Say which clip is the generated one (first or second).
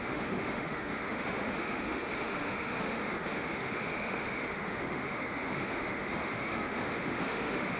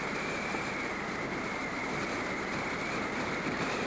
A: first